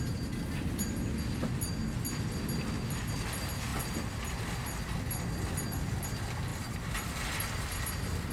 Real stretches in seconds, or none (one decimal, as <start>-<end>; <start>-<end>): 0.0-3.7; 4.5-6.5; 7.2-8.3